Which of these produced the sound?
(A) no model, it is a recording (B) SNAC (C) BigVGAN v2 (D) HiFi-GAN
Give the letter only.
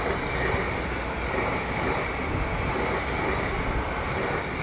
A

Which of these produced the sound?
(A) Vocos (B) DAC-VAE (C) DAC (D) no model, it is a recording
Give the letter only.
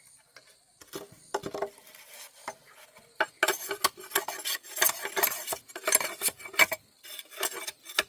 D